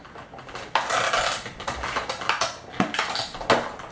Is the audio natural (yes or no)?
yes